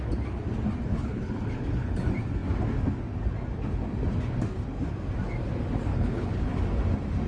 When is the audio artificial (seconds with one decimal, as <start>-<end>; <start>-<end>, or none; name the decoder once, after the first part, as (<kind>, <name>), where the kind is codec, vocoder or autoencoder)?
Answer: 0.9-2.0 (codec, HILCodec); 5.9-6.6